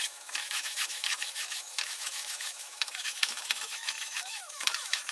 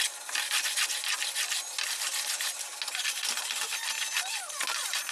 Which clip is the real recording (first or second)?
second